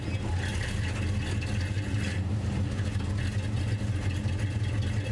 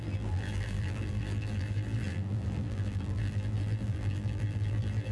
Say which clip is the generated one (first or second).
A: second